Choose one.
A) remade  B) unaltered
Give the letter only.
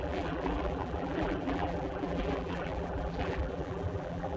A